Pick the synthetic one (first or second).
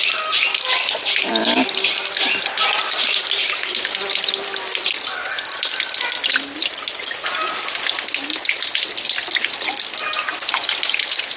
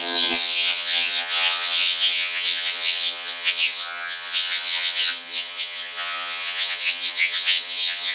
second